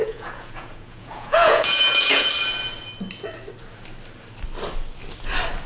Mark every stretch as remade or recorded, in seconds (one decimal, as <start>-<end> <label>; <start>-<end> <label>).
0.0-2.3 remade; 2.3-5.7 recorded